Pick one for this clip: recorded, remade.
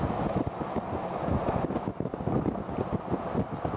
recorded